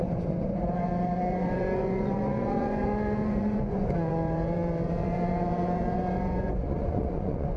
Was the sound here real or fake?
fake